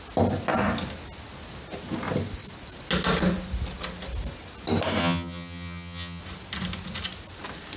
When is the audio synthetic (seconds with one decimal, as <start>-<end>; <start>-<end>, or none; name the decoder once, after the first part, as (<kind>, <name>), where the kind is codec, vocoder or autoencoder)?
5.0-6.2 (vocoder, HiFi-GAN)